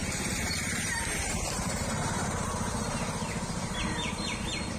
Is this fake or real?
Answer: fake